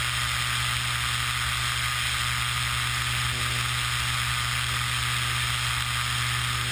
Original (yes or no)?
yes